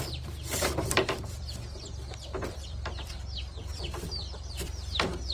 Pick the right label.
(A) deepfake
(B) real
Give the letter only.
A